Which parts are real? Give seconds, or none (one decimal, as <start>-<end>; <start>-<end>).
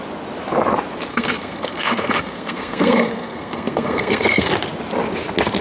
0.0-1.1; 4.5-5.6